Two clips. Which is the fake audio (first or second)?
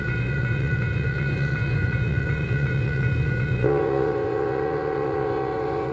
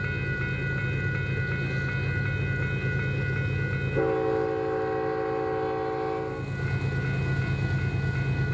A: first